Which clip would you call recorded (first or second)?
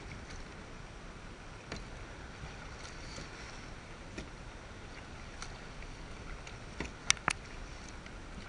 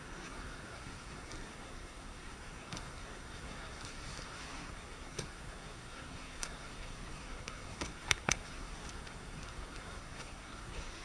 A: first